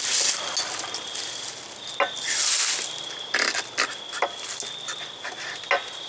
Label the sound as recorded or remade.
recorded